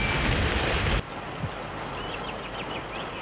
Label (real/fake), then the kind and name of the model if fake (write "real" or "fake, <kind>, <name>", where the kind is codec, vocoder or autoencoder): real